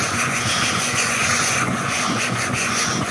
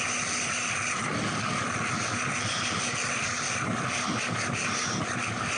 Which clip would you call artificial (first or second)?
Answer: first